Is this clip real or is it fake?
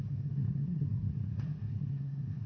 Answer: fake